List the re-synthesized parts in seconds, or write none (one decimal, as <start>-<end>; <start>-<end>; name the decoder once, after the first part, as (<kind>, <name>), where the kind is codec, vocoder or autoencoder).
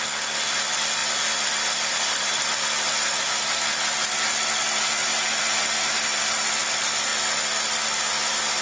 none